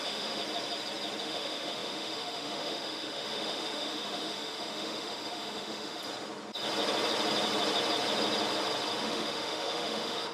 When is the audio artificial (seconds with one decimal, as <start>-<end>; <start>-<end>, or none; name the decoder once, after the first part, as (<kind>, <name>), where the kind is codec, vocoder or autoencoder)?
0.0-0.4 (autoencoder, DAC-VAE); 1.2-6.0; 9.0-10.3